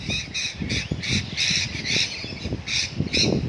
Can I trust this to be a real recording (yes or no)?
yes